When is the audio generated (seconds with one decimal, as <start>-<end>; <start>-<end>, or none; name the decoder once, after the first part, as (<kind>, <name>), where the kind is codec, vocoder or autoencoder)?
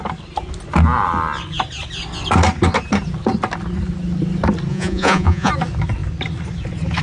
4.7-5.5 (vocoder, Vocos)